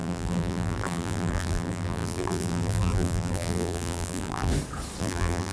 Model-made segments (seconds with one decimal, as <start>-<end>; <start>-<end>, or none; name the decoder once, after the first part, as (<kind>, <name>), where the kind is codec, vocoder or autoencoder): 0.0-4.5 (vocoder, BigVGAN v2); 5.0-5.5